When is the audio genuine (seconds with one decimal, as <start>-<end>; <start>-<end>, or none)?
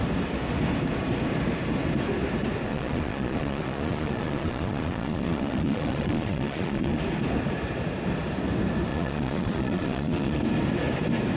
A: 0.0-2.7; 7.0-8.9; 10.4-11.4